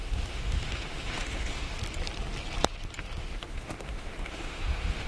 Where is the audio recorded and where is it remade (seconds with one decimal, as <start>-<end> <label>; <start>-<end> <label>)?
0.0-1.8 remade; 1.8-3.2 recorded; 3.2-5.1 remade